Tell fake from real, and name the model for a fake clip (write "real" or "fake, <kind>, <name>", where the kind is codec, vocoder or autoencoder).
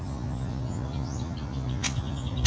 fake, vocoder, Vocos